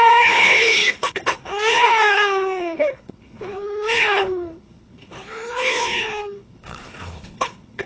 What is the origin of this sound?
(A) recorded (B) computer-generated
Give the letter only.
B